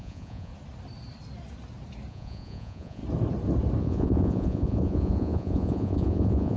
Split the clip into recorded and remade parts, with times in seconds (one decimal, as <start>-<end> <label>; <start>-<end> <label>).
0.0-0.5 remade; 0.5-2.1 recorded; 2.1-3.0 remade; 3.0-3.8 recorded; 3.8-6.6 remade